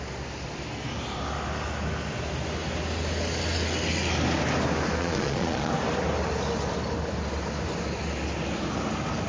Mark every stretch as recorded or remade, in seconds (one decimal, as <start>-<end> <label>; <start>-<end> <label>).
0.0-5.0 recorded; 5.0-5.7 remade; 5.7-9.3 recorded